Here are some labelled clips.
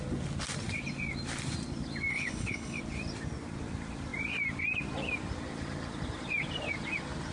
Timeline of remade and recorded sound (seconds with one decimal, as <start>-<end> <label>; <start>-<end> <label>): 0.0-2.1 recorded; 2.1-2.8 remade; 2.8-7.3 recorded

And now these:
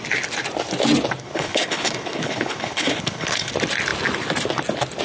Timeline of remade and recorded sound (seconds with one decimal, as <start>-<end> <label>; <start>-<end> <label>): 0.0-1.2 recorded; 1.2-3.5 remade; 3.5-5.0 recorded

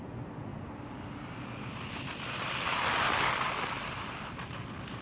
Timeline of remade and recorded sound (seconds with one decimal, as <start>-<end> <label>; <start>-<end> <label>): 0.0-5.0 recorded

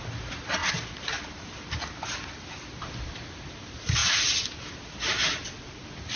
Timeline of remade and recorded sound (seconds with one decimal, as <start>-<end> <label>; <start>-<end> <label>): 0.0-6.2 recorded